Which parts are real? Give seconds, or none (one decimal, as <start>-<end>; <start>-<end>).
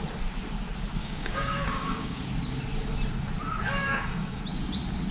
0.0-1.0; 2.2-3.8; 4.4-5.1